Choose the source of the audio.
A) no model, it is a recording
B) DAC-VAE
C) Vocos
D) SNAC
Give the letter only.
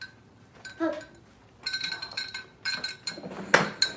A